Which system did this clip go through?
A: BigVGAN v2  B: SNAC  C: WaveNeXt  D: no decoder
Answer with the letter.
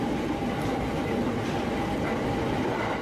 D